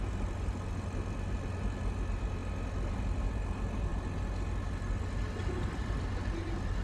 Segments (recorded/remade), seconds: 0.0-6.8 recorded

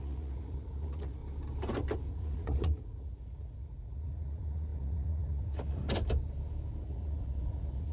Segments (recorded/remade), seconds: 0.0-1.2 remade; 1.2-2.1 recorded; 2.1-5.8 remade; 5.8-6.8 recorded; 6.8-7.9 remade

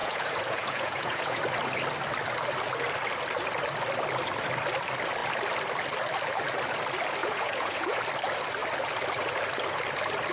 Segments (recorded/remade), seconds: 0.0-1.4 remade; 1.4-7.2 recorded; 7.2-8.0 remade; 8.0-10.3 recorded

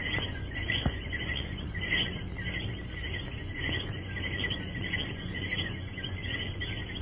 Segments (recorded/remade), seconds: 0.0-2.2 remade; 2.2-3.0 recorded; 3.0-6.6 remade; 6.6-7.0 recorded

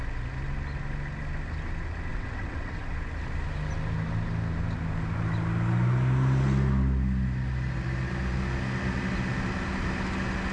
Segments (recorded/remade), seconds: 0.0-2.1 recorded; 2.1-2.8 remade; 2.8-10.5 recorded